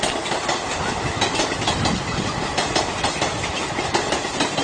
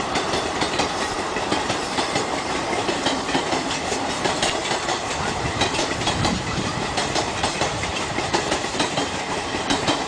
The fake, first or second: second